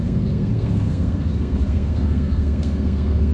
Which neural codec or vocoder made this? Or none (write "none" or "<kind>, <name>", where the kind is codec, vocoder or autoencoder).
codec, SNAC